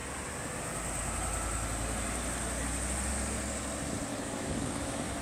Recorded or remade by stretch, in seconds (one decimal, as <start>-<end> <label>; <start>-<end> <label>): 0.0-4.1 recorded; 4.1-4.8 remade; 4.8-5.2 recorded